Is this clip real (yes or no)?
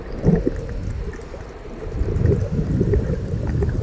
yes